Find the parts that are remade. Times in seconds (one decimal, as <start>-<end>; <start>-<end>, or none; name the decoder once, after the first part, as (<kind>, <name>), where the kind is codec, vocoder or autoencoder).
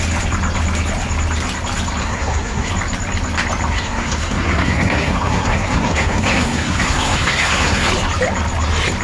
2.0-2.7 (codec, SNAC); 3.7-7.9